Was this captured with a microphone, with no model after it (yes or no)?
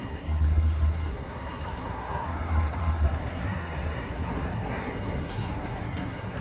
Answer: no